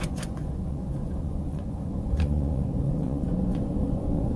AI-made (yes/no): yes